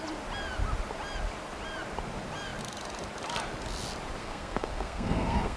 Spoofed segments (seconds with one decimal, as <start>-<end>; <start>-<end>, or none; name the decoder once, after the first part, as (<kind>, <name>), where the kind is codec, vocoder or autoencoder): 4.2-5.6 (codec, SNAC)